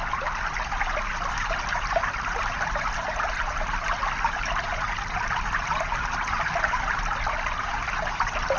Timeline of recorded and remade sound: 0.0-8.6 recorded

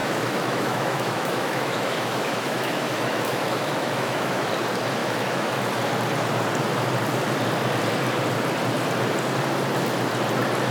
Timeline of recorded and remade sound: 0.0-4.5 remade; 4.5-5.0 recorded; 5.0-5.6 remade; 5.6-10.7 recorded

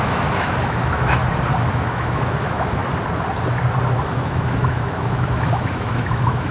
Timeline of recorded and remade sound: 0.0-1.2 remade; 1.2-1.7 recorded; 1.7-2.8 remade; 2.8-4.0 recorded; 4.0-6.5 remade

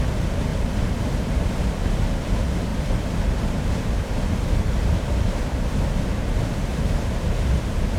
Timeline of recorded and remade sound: 0.0-0.5 recorded; 0.5-1.7 remade; 1.7-2.7 recorded; 2.7-5.4 remade; 5.4-6.7 recorded; 6.7-7.3 remade; 7.3-8.0 recorded